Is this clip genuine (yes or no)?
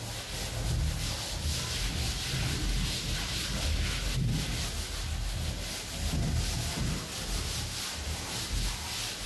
yes